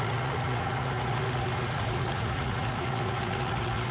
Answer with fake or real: fake